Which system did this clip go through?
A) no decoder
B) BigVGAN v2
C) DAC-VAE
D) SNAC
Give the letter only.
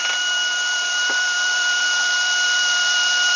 B